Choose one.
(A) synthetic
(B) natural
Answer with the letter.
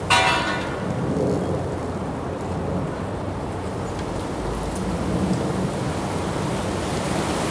B